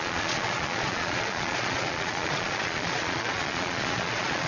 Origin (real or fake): fake